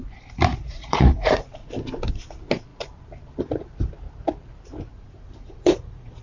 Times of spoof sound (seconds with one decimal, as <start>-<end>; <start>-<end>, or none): 0.5-1.7; 4.9-6.2